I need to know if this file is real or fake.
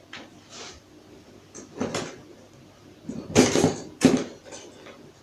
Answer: real